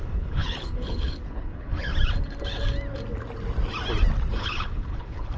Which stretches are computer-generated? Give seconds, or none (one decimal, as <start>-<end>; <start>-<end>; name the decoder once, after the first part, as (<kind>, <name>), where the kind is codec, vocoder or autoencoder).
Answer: 0.0-1.9 (codec, HILCodec); 4.3-5.4